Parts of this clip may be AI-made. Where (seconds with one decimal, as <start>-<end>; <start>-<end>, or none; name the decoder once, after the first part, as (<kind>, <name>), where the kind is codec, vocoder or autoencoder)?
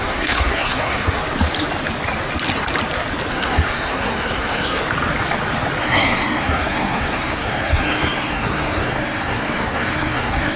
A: 0.0-1.2 (codec, SNAC); 3.3-4.8; 5.8-10.6